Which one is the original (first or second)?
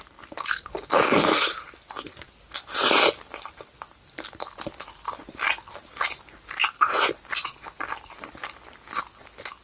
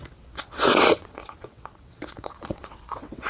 first